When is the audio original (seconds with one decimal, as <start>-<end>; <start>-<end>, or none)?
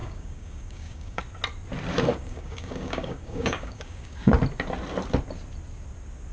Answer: 1.2-2.1; 4.3-6.3